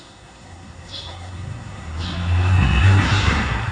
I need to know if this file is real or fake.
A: fake